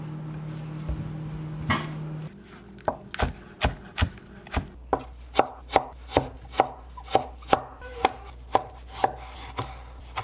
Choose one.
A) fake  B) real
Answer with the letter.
B